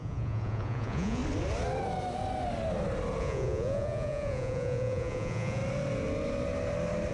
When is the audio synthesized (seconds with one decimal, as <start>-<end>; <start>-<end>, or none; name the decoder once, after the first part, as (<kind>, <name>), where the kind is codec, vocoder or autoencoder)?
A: 0.0-1.2 (vocoder, Vocos); 3.2-5.6